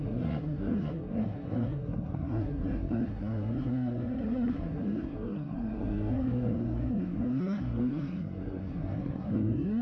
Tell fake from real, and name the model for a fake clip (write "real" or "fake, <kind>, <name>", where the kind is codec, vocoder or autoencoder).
fake, codec, SNAC